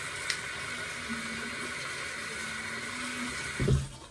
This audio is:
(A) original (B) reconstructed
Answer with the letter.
A